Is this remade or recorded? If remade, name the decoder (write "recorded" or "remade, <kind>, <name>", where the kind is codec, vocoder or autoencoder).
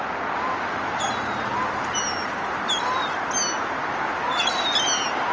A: recorded